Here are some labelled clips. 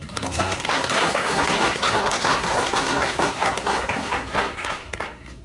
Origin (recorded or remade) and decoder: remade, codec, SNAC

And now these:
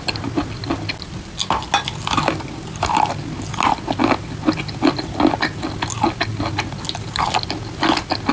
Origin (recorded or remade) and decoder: recorded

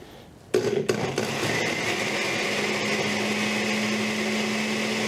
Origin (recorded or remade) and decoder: recorded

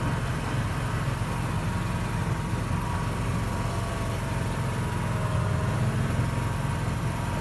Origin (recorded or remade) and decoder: recorded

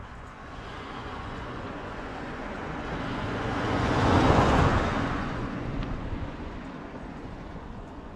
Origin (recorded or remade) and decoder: remade, vocoder, Vocos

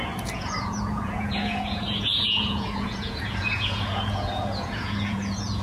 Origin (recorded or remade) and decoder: remade, vocoder, Vocos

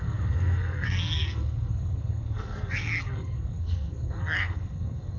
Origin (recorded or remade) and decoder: remade, codec, SNAC